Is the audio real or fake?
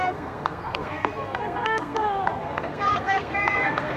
fake